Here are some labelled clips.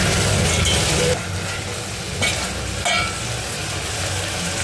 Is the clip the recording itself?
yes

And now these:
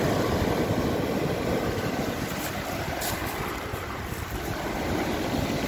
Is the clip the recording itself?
yes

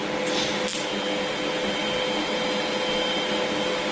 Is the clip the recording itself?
yes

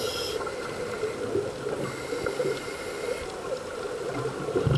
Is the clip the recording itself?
yes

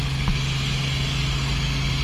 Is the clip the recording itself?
yes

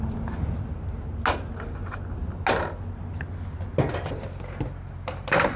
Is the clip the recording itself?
yes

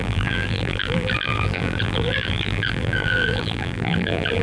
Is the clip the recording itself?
no